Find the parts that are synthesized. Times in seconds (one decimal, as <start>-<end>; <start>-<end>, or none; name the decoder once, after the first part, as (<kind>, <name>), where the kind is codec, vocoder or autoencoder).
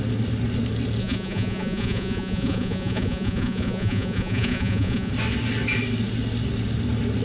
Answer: 1.0-5.1 (vocoder, Vocos)